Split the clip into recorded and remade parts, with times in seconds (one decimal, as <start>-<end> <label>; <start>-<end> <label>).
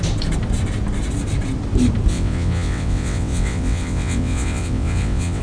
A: 0.0-2.1 recorded; 2.1-5.4 remade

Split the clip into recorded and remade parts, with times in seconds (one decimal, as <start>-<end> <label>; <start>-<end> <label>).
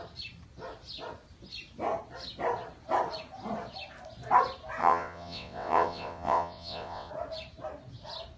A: 0.0-4.8 recorded; 4.8-7.1 remade; 7.1-8.4 recorded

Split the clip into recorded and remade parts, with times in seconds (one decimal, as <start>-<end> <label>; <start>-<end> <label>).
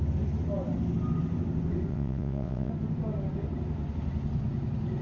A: 0.0-1.9 recorded; 1.9-2.7 remade; 2.7-5.0 recorded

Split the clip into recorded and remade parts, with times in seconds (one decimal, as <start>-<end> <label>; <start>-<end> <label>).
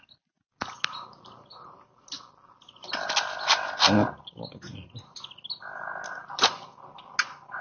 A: 0.0-7.6 recorded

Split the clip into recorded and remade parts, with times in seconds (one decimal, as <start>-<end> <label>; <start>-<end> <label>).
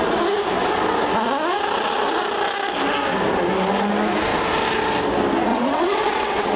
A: 0.0-5.5 recorded; 5.5-6.6 remade